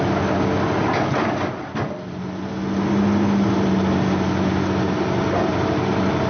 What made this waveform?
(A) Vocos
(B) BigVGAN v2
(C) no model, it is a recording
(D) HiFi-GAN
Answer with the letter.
C